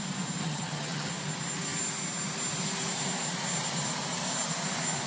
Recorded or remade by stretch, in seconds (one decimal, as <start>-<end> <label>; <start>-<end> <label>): 0.0-0.4 recorded; 0.4-1.1 remade; 1.1-5.1 recorded

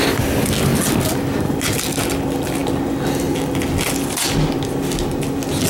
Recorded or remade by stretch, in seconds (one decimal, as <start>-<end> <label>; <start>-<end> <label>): 0.0-5.7 recorded

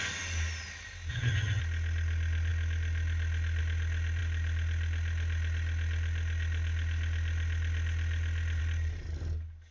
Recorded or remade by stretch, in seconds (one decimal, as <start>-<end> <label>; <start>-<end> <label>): 0.0-1.1 recorded; 1.1-1.6 remade; 1.6-9.7 recorded

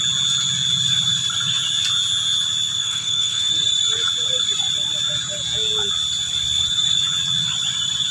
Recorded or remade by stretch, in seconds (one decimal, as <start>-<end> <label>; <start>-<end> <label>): 0.0-2.8 recorded; 2.8-3.5 remade; 3.5-8.1 recorded